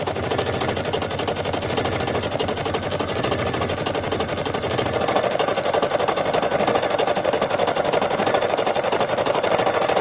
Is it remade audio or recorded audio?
recorded